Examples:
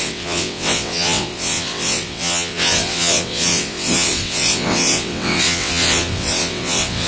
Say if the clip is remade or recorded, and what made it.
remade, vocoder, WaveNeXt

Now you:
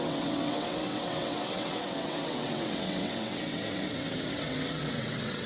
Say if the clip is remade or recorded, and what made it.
remade, vocoder, WaveNeXt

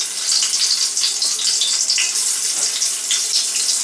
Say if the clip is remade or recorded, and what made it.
recorded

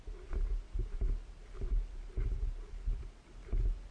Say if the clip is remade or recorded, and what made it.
recorded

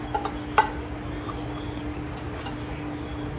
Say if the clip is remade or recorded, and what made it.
recorded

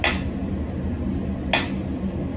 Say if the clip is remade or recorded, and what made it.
recorded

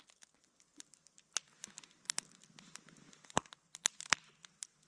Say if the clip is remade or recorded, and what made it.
recorded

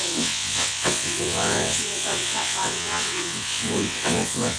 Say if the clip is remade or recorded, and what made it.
remade, vocoder, WaveNeXt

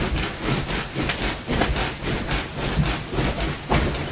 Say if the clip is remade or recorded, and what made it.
recorded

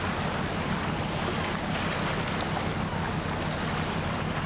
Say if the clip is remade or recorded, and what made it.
recorded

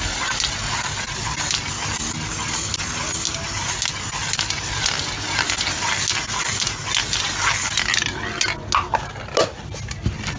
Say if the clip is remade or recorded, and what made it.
recorded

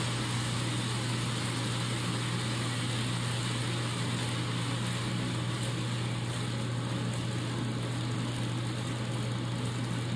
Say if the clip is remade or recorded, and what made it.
recorded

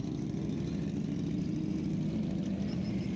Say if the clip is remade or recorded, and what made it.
recorded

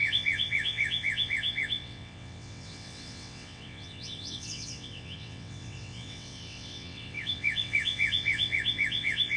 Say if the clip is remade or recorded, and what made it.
remade, vocoder, WaveNeXt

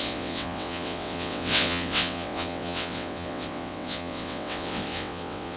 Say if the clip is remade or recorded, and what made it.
remade, vocoder, WaveNeXt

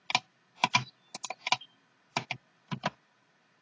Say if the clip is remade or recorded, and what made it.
recorded